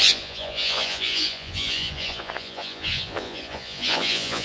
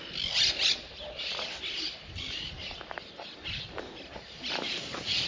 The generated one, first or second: first